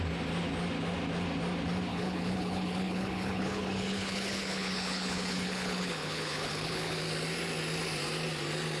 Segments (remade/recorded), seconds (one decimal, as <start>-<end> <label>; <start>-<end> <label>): 0.0-1.9 recorded; 1.9-7.0 remade; 7.0-8.8 recorded